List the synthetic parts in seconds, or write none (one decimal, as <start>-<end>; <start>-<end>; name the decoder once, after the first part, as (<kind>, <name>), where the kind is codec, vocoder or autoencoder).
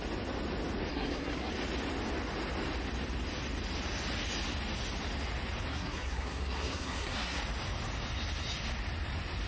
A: 0.9-1.5 (codec, SNAC); 5.7-7.4